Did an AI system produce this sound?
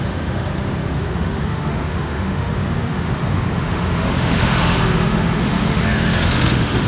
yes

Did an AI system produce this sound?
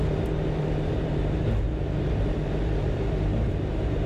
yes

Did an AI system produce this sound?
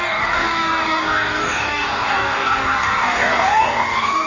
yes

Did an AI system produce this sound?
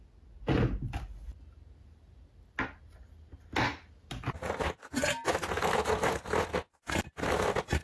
no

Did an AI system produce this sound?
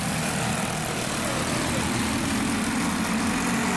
no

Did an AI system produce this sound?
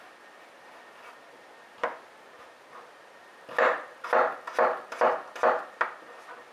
no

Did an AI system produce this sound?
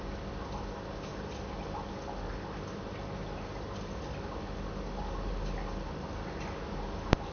no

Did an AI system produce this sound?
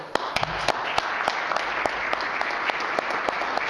no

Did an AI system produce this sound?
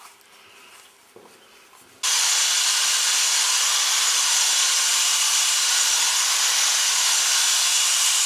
no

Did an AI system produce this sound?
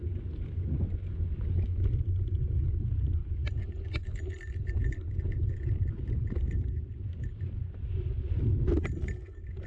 no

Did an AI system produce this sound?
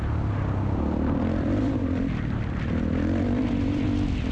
yes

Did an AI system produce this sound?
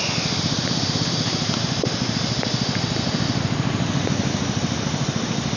no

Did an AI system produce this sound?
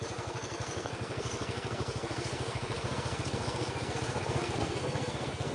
yes